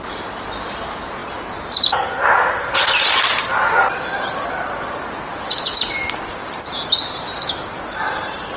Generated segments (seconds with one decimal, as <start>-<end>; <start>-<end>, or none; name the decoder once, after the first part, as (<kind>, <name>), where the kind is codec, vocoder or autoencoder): none